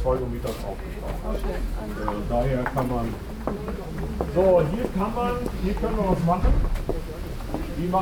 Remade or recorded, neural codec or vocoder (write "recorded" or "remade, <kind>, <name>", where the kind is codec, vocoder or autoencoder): recorded